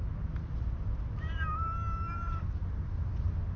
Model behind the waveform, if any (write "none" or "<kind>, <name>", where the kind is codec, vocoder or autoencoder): none